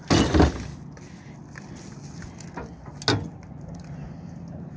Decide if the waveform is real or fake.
real